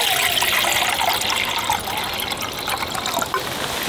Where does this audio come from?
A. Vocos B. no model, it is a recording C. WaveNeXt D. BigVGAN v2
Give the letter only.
B